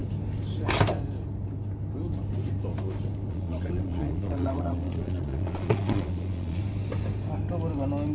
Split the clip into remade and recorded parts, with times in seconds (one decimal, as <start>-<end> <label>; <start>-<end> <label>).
0.0-3.3 recorded; 3.3-6.6 remade; 6.6-8.1 recorded